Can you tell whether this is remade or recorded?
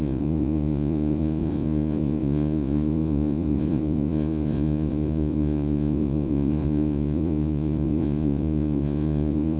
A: remade